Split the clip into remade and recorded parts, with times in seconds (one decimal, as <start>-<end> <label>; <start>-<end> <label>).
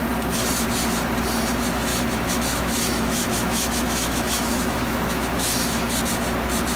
0.0-1.9 recorded; 1.9-6.0 remade; 6.0-6.8 recorded